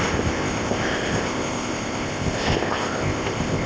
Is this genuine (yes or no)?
no